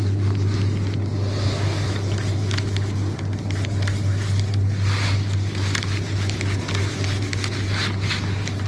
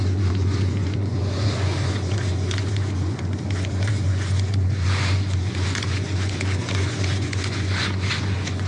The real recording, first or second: first